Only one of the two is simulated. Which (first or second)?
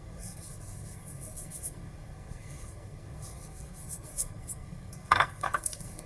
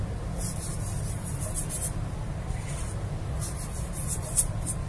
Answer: first